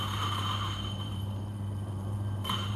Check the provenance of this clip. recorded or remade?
remade